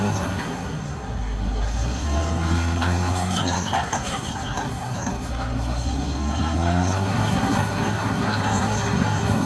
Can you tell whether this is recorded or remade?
remade